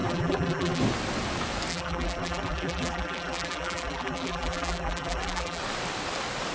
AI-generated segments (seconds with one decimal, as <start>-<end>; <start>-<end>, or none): 0.0-0.8; 1.7-5.6